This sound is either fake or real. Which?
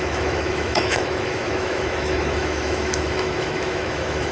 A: fake